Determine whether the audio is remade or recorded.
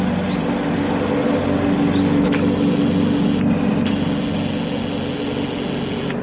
recorded